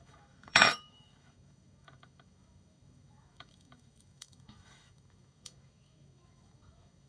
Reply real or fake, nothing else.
fake